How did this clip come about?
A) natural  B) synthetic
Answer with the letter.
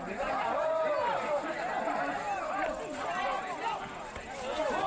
A